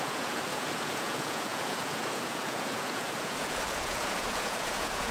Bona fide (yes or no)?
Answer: no